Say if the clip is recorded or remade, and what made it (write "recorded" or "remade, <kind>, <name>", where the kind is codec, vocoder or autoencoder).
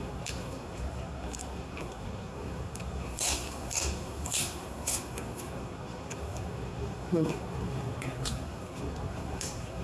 remade, codec, SNAC